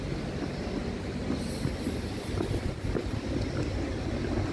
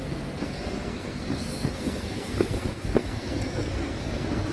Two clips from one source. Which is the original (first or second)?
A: first